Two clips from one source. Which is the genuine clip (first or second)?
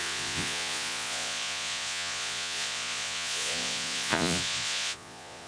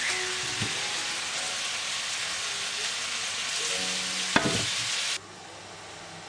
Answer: second